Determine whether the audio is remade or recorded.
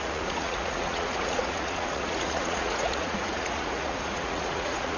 remade